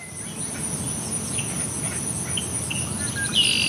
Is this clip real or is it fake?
real